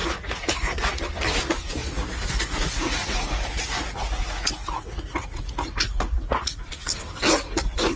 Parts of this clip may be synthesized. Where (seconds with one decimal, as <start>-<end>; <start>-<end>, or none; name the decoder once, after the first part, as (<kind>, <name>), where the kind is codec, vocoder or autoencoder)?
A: 0.0-1.0 (vocoder, Vocos); 1.8-6.6